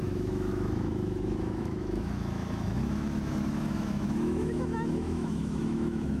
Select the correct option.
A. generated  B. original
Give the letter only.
A